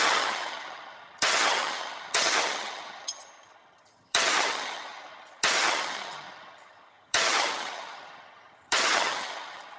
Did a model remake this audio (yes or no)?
yes